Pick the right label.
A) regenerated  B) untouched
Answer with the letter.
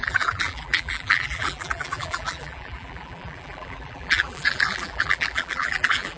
A